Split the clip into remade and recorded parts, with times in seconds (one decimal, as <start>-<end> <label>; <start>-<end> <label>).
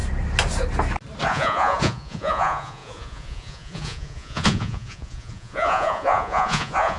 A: 0.0-1.3 recorded; 1.3-7.0 remade